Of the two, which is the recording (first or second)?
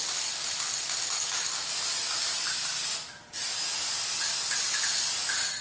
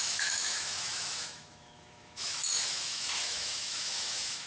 first